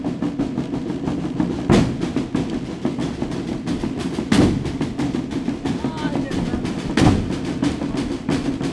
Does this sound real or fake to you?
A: real